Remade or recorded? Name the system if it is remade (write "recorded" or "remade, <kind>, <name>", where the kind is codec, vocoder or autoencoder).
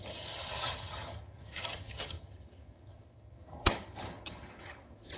remade, vocoder, HiFi-GAN